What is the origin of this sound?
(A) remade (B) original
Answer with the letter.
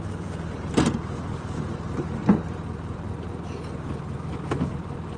B